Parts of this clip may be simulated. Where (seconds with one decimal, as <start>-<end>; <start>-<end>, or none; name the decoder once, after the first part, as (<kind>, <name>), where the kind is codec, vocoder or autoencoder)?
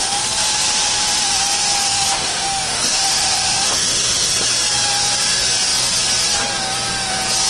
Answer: 1.9-4.3 (autoencoder, DAC-VAE)